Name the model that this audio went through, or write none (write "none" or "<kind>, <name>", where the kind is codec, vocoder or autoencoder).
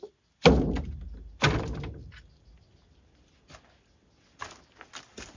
none